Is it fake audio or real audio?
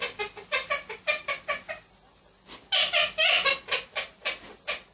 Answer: real